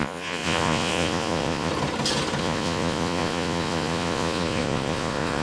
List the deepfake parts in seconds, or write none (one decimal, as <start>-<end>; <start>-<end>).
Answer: 0.0-1.7; 2.4-5.4